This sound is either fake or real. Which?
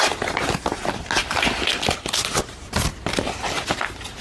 real